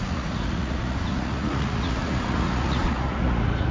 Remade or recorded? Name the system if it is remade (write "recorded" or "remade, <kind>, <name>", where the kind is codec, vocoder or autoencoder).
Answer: remade, vocoder, Vocos